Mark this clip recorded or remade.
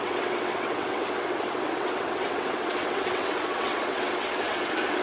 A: remade